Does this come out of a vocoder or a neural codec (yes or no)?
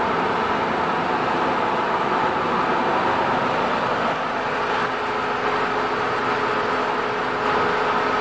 no